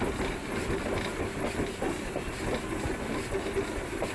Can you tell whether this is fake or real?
real